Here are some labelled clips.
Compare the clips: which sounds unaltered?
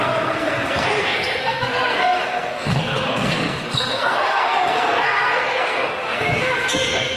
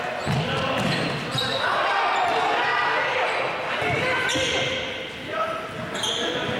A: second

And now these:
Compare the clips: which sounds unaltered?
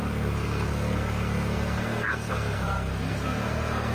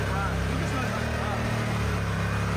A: second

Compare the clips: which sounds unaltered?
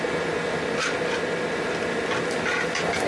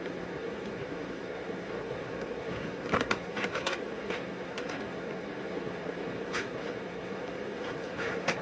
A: first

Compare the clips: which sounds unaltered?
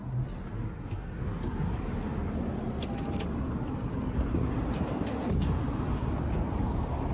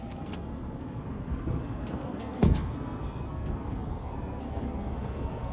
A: first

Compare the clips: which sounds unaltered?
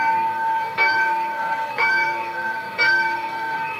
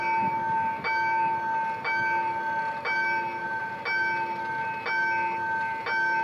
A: second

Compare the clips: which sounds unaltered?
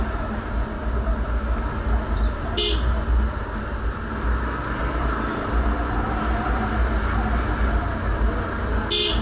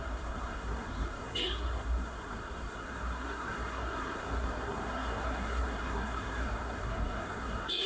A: first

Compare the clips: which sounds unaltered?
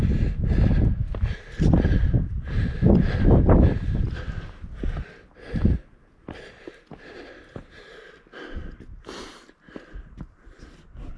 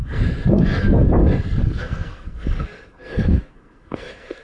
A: first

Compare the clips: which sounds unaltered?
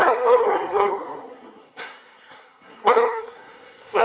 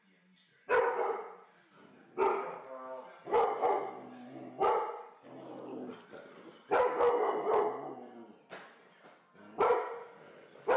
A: second